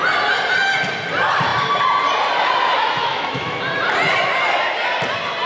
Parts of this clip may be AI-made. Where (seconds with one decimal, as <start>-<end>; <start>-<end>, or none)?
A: 3.0-3.6